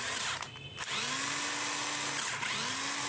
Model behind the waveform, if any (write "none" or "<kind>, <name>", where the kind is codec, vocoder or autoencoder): none